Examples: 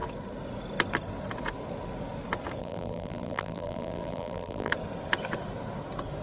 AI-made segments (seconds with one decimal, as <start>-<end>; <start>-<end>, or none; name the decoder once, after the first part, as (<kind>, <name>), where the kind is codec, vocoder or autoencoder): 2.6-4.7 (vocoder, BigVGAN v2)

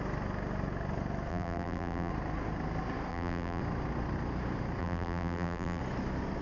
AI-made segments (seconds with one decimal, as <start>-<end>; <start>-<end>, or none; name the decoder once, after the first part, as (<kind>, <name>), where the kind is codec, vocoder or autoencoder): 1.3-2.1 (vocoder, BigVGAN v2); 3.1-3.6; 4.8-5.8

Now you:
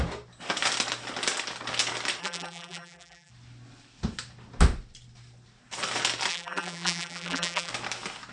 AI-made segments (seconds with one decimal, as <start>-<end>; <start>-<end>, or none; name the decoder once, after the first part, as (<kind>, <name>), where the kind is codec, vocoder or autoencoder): 2.2-3.3 (vocoder, BigVGAN v2); 6.3-7.7

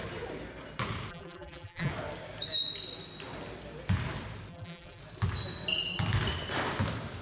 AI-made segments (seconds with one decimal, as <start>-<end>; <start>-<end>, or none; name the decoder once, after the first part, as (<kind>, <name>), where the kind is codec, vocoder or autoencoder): 1.1-1.9 (vocoder, BigVGAN v2); 4.5-5.0